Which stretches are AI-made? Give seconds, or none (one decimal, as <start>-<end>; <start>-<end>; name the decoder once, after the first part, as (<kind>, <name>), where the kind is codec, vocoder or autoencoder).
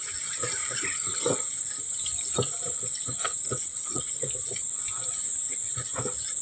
3.7-4.3 (vocoder, Vocos)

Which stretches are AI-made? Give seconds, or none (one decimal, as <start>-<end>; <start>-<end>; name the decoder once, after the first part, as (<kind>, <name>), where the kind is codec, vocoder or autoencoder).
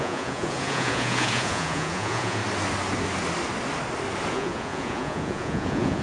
0.0-2.4 (vocoder, Vocos); 4.3-6.0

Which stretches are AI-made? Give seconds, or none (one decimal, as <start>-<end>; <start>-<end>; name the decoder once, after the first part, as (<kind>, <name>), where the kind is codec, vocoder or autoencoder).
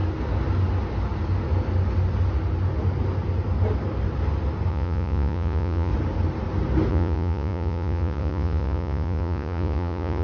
4.7-5.9 (vocoder, Vocos); 6.9-10.2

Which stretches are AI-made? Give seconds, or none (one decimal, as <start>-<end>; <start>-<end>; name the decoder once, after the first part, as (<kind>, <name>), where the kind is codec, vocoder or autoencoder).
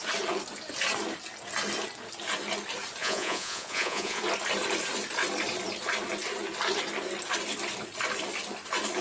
3.0-4.2 (vocoder, Vocos)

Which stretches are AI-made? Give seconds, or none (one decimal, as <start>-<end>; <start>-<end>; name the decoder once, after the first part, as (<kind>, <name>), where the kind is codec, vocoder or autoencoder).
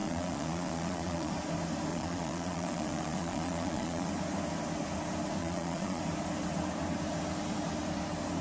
0.0-1.3 (vocoder, Vocos); 1.9-4.1; 5.4-6.0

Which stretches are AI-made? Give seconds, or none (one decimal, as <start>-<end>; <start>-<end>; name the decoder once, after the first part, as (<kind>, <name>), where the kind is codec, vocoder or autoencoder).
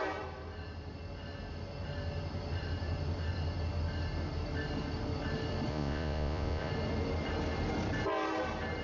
5.7-6.7 (vocoder, Vocos)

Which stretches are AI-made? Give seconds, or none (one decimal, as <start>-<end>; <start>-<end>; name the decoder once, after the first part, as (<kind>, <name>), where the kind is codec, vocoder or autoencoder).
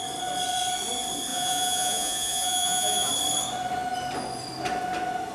1.3-3.1 (vocoder, Vocos)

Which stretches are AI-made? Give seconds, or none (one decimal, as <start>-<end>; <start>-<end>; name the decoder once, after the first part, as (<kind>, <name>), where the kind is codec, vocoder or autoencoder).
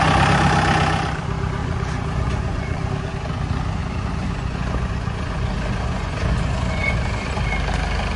1.6-2.9 (vocoder, Vocos); 3.8-7.3